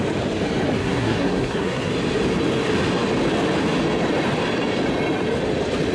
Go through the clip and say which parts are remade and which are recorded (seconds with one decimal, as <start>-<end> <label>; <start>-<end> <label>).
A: 0.0-0.8 recorded; 0.8-1.9 remade; 1.9-5.9 recorded